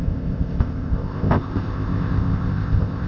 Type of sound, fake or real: fake